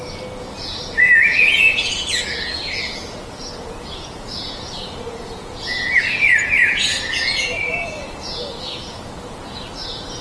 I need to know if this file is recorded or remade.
remade